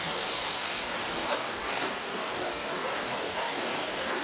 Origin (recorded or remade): remade